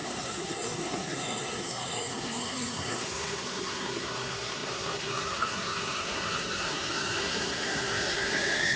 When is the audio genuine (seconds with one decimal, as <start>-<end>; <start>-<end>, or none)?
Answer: none